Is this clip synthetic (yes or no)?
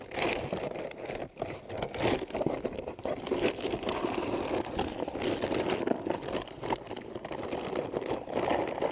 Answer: no